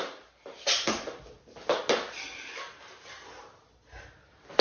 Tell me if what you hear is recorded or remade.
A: recorded